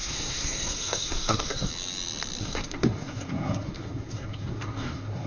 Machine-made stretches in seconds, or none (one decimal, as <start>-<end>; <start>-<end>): 0.0-1.7; 2.4-5.3